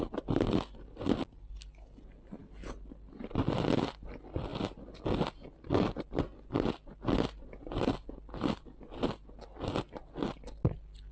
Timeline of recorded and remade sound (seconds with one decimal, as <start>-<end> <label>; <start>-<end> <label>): 0.0-11.1 recorded